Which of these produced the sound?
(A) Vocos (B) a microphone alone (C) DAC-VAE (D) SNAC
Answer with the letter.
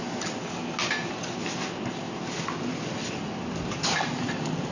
B